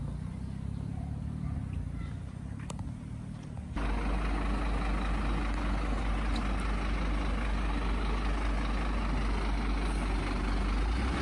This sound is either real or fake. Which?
real